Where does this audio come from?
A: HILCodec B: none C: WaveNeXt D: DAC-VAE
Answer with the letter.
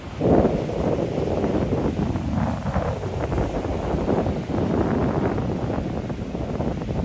B